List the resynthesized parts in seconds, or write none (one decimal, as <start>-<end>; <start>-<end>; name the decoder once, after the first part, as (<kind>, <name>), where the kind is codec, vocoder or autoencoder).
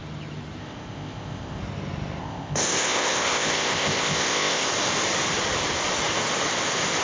0.6-1.6 (codec, ZipCodec); 2.2-4.7